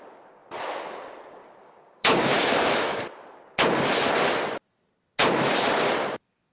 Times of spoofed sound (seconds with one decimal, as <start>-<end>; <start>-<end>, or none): 1.4-3.0